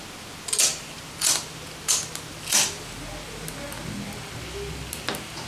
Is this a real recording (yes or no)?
yes